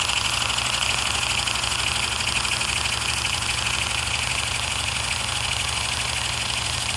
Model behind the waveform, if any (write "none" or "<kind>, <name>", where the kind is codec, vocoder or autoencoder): vocoder, Vocos